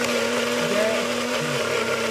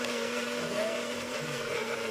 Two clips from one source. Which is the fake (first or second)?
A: second